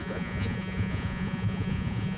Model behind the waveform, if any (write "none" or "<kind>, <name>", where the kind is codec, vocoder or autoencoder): vocoder, Vocos